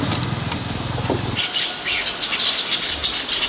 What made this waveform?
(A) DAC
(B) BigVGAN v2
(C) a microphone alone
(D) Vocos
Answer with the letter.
C